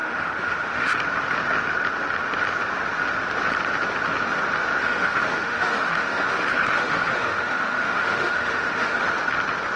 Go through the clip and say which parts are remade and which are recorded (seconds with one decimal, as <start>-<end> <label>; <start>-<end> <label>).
0.0-1.0 remade; 1.0-4.8 recorded; 4.8-9.0 remade; 9.0-9.8 recorded